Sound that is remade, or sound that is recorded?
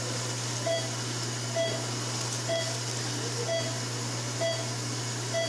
recorded